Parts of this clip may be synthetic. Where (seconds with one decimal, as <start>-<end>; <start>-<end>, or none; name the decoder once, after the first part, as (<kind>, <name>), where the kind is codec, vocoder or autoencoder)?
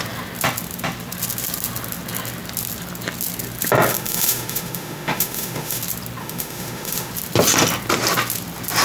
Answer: 3.9-5.8 (autoencoder, DAC-VAE); 6.2-7.1